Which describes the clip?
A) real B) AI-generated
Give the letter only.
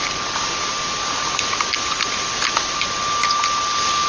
A